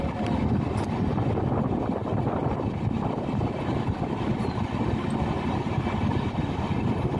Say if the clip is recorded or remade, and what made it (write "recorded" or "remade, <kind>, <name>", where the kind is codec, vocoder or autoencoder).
recorded